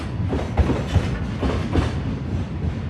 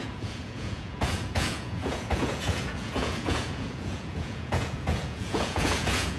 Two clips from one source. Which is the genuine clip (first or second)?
first